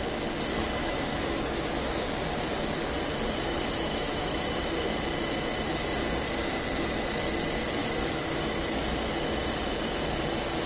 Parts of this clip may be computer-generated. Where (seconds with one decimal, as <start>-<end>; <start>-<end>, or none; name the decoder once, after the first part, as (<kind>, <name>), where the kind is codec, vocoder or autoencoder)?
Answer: 0.8-2.0 (autoencoder, DAC-VAE); 3.9-4.4; 7.8-9.1